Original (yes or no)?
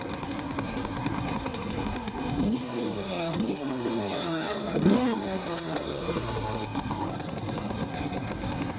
no